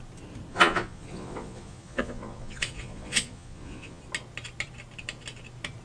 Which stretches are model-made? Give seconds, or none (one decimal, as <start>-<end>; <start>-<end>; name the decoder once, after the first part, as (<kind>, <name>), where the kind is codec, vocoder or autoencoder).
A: 0.5-4.0 (vocoder, Vocos)